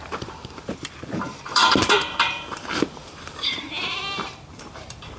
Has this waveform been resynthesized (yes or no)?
yes